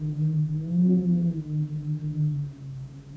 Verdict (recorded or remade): remade